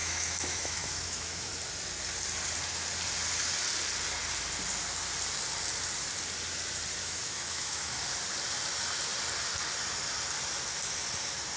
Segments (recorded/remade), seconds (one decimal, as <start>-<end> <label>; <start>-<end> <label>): 0.0-1.5 remade; 1.5-7.0 recorded; 7.0-8.0 remade; 8.0-11.6 recorded